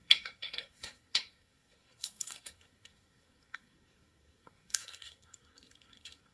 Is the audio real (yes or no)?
no